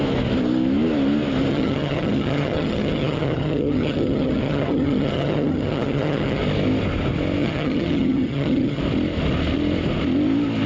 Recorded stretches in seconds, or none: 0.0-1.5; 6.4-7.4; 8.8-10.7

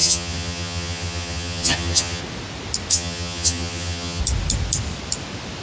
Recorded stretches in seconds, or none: 2.2-2.9; 4.2-5.6

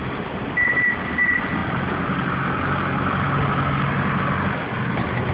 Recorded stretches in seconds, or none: 0.0-5.3

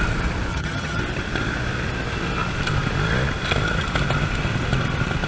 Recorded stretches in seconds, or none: 0.0-0.5; 1.0-5.3